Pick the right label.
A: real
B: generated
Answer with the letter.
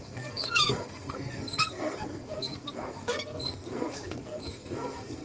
B